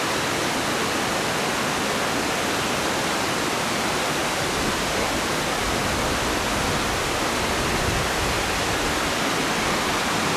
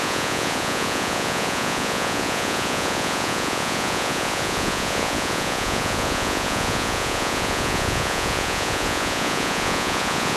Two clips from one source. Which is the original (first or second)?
first